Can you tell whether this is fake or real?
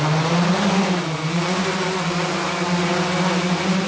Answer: real